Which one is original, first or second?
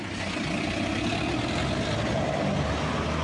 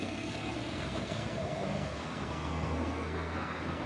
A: first